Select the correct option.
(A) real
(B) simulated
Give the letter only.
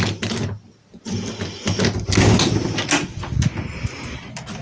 A